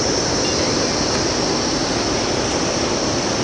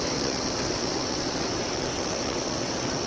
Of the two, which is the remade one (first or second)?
second